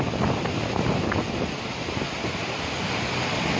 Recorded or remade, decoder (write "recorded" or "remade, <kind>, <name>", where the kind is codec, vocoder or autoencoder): recorded